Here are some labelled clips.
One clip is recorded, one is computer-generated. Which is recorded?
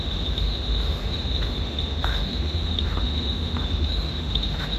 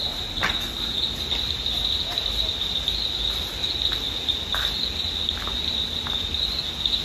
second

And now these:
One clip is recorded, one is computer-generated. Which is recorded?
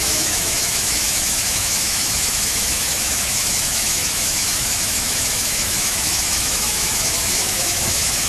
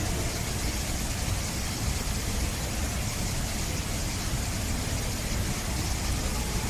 second